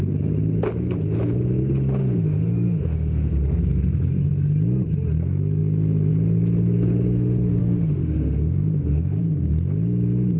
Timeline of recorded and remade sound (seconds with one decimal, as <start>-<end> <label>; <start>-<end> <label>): 0.0-2.0 recorded; 2.0-3.3 remade; 3.3-7.6 recorded; 7.6-9.2 remade; 9.2-10.4 recorded